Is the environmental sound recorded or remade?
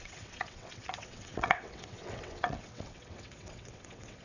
remade